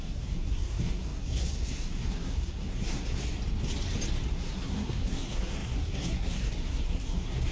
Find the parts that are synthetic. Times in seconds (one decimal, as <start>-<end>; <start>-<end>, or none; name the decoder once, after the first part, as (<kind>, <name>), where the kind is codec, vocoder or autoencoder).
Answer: 0.0-3.2 (codec, SNAC); 4.3-7.5